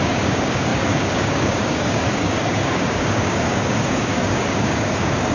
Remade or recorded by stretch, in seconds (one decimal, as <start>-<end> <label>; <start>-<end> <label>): 0.0-5.3 remade